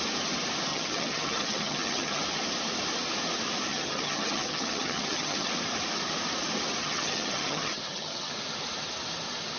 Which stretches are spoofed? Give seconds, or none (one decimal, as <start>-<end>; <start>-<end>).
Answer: 0.7-2.2; 3.7-5.5; 6.8-8.3